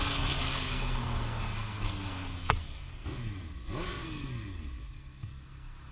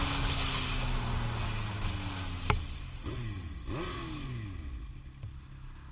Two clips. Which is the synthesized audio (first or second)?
first